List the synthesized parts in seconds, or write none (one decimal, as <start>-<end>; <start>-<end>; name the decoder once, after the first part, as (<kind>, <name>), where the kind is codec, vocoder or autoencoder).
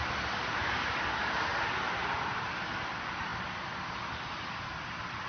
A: none